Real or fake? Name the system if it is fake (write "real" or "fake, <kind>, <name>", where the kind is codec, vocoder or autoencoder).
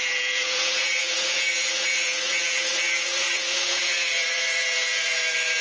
fake, vocoder, Vocos